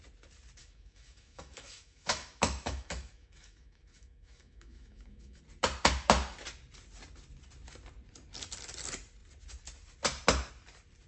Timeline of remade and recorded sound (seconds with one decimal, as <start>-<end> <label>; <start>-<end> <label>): 0.0-0.6 recorded; 0.6-5.4 remade; 5.4-11.1 recorded